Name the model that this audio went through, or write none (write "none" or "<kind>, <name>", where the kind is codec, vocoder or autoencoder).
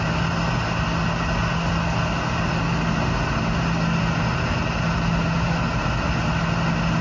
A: none